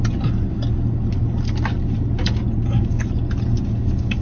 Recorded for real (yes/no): yes